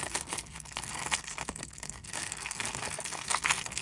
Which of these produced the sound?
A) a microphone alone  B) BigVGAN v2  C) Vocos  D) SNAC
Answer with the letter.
D